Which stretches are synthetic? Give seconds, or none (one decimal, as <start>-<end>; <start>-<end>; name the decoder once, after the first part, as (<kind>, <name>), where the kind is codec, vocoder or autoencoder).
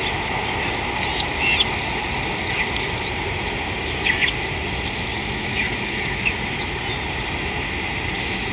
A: 5.2-6.8 (autoencoder, DAC-VAE)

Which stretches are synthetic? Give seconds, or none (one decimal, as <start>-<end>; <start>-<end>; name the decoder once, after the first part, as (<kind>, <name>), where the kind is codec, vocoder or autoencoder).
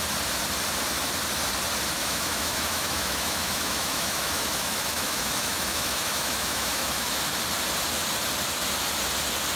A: 2.0-7.2 (autoencoder, DAC-VAE)